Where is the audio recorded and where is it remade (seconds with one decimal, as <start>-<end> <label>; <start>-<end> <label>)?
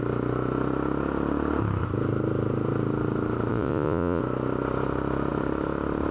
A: 0.0-3.5 recorded; 3.5-4.2 remade; 4.2-6.1 recorded